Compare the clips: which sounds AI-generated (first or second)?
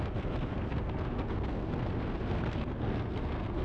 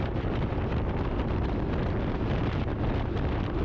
first